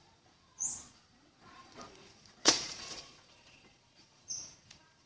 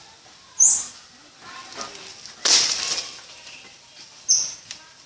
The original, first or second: second